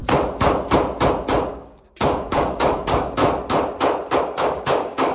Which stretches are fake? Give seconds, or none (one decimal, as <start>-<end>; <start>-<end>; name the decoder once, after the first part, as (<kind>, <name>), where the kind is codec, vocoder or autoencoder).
1.5-3.2 (codec, DAC); 4.2-5.1